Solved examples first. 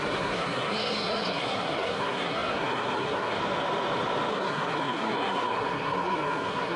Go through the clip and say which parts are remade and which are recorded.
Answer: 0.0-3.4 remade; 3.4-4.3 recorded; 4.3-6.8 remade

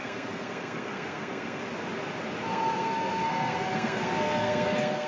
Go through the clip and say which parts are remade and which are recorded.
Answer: 0.0-1.6 remade; 1.6-2.5 recorded; 2.5-5.1 remade

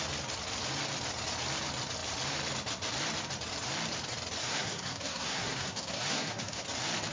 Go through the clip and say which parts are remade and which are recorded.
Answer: 0.0-4.4 recorded; 4.4-6.6 remade; 6.6-7.1 recorded

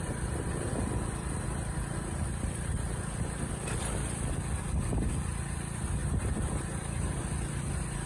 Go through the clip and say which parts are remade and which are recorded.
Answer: 0.0-6.0 recorded; 6.0-8.1 remade

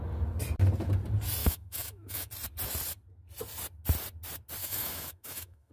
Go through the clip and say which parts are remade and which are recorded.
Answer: 0.0-1.4 recorded; 1.4-2.3 remade; 2.3-4.6 recorded; 4.6-5.7 remade

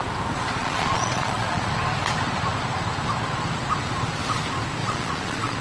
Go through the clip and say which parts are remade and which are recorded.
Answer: 0.0-0.6 recorded; 0.6-1.7 remade; 1.7-4.8 recorded; 4.8-5.6 remade